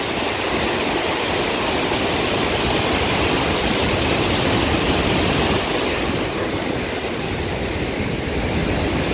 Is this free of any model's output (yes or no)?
yes